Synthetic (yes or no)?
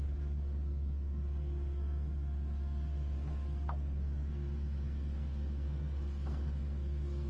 yes